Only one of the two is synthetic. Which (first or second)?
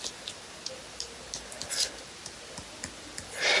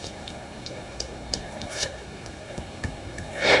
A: second